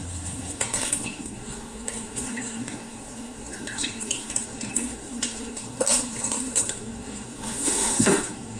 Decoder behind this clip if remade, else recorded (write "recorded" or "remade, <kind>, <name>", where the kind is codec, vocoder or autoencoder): remade, codec, SNAC